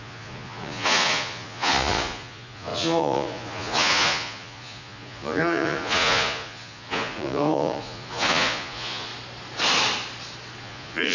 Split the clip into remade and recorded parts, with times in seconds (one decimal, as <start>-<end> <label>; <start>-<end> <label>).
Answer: 0.0-9.1 remade; 9.1-10.6 recorded; 10.6-11.1 remade